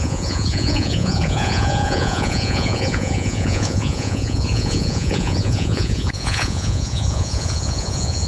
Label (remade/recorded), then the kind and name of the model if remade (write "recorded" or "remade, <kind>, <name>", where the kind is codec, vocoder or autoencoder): remade, vocoder, Vocos